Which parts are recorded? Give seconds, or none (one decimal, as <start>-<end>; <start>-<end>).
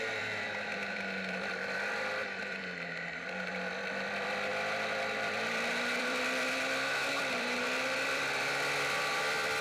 none